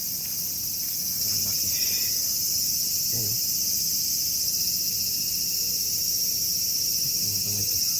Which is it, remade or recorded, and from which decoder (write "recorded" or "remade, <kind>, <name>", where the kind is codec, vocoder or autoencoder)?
recorded